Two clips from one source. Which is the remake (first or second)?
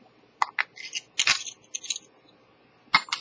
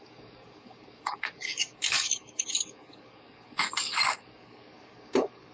second